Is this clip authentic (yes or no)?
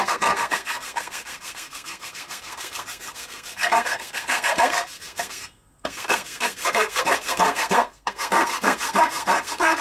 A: no